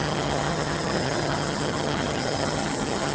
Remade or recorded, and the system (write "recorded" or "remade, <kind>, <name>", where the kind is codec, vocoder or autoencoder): remade, vocoder, HiFi-GAN